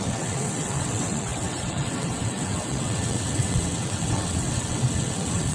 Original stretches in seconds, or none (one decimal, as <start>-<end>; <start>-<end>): none